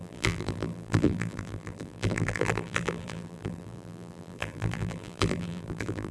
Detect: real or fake fake